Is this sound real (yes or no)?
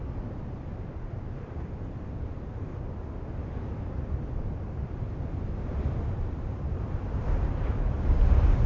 yes